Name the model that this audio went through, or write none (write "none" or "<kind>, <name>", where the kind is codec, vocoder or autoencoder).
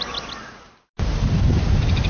none